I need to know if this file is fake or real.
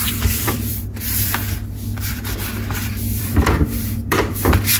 fake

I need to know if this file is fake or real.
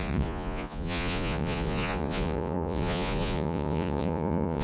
fake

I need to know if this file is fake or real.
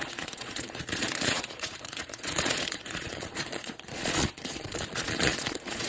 fake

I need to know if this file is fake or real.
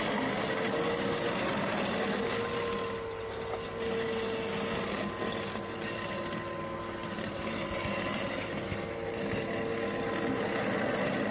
real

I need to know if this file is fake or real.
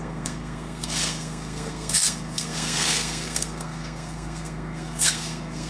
fake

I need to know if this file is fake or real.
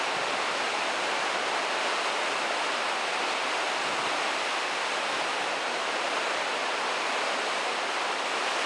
fake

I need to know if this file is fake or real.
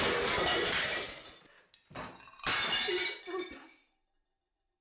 real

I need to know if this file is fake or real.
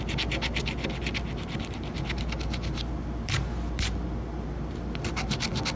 real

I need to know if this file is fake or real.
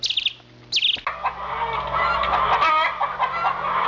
real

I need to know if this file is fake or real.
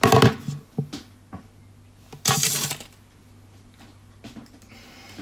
real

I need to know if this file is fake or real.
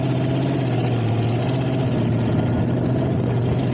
real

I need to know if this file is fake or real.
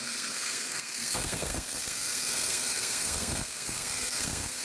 fake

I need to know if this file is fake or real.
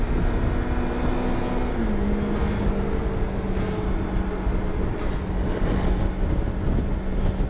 real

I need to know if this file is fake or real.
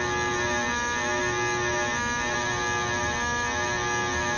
real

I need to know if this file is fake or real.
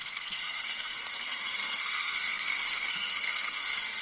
fake